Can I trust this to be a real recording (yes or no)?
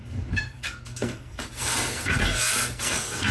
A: no